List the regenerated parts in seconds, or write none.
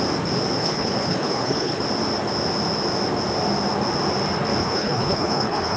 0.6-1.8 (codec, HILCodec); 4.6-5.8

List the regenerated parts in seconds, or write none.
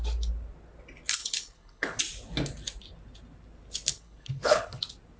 1.2-2.0 (codec, HILCodec); 3.9-4.8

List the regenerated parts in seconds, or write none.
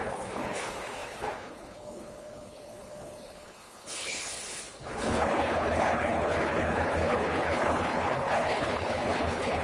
0.0-9.6 (codec, HILCodec)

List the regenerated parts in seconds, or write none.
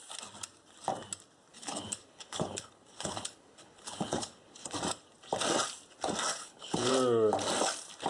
1.5-4.8 (codec, HILCodec); 6.4-6.9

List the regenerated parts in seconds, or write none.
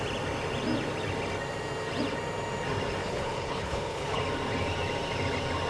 3.0-4.2 (codec, HILCodec)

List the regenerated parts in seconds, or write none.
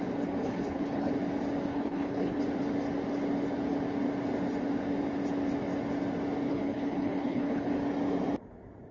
0.4-1.1 (codec, HILCodec); 1.7-2.4; 6.5-7.7